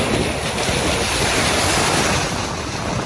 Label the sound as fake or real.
real